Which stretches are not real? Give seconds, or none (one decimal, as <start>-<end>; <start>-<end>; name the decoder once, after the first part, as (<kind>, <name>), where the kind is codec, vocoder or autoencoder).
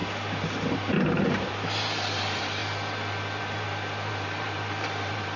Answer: 1.1-2.6 (vocoder, BigVGAN v2); 3.4-5.4